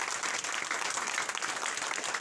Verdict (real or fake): real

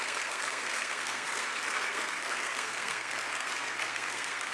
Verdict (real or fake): fake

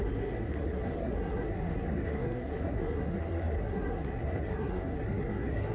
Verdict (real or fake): fake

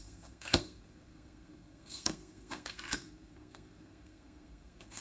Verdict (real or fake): fake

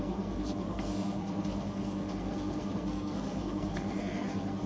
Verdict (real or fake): fake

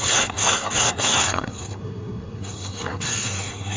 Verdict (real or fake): fake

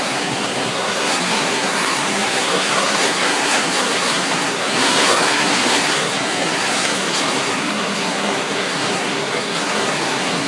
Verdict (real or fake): fake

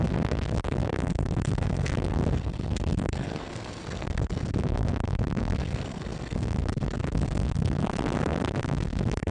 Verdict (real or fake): fake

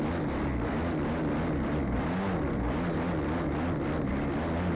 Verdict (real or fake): real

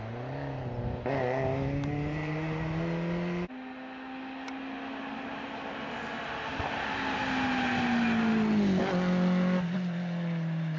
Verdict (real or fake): real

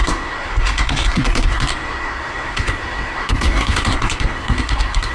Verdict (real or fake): fake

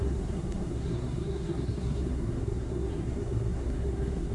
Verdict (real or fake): fake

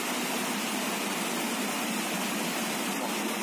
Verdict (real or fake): real